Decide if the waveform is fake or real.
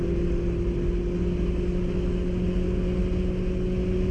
real